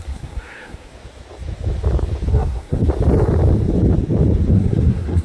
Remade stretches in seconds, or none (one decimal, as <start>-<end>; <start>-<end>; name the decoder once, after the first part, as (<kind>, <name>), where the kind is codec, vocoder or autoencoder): 0.0-0.9 (codec, SNAC); 2.3-2.8; 4.5-5.2

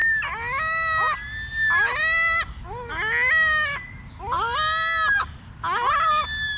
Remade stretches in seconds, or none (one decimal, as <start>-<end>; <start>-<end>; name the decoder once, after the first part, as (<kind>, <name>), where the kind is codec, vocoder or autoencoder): none